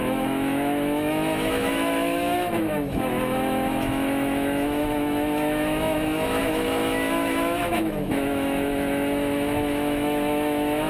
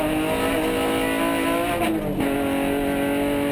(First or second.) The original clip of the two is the second